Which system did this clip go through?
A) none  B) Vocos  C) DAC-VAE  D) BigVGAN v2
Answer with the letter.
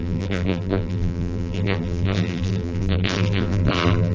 D